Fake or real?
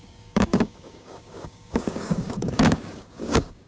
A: fake